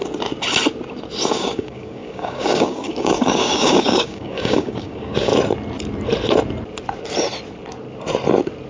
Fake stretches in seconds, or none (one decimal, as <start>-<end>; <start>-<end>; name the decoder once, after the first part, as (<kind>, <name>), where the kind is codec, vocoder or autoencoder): 1.3-5.3 (codec, DAC)